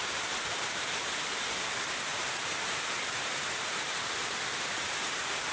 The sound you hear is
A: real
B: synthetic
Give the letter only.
B